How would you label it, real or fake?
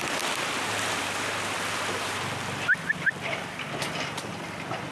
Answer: real